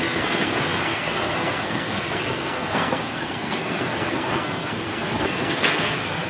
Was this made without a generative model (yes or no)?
no